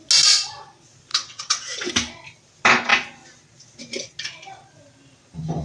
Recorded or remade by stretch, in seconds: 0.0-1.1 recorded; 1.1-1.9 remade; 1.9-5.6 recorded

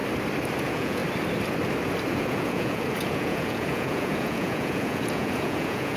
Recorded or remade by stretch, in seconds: 0.0-0.6 recorded; 0.6-1.0 remade; 1.0-2.1 recorded; 2.1-6.0 remade

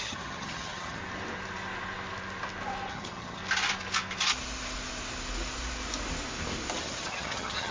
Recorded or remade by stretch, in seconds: 0.0-1.0 remade; 1.0-2.9 recorded; 2.9-3.4 remade; 3.4-6.8 recorded; 6.8-7.7 remade

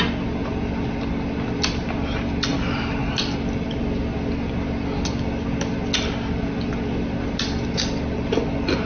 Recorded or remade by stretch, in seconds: 0.0-8.9 recorded

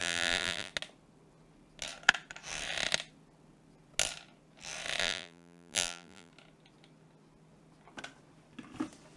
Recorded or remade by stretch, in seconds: 0.0-0.7 remade; 0.7-5.0 recorded; 5.0-6.3 remade; 6.3-9.2 recorded

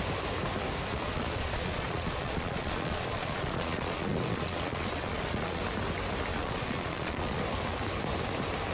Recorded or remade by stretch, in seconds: 0.0-0.9 recorded; 0.9-5.6 remade; 5.6-6.3 recorded; 6.3-7.4 remade; 7.4-8.7 recorded